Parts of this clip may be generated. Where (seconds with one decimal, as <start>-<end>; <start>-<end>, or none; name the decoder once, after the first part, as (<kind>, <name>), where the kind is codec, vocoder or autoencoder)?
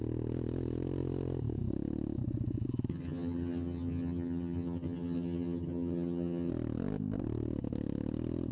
2.9-6.5 (vocoder, HiFi-GAN)